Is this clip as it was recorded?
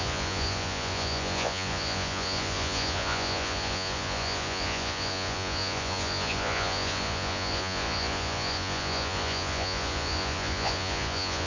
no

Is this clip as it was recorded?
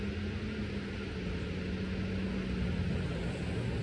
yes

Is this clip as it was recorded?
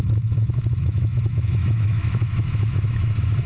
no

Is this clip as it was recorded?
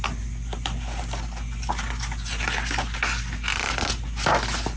yes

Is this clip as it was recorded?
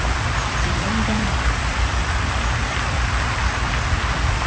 no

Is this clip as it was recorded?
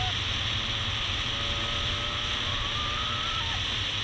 yes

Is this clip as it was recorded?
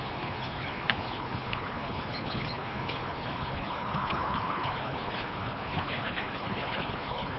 no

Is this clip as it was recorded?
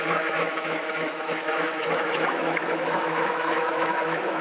no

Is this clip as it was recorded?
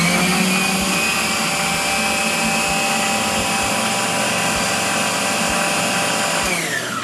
yes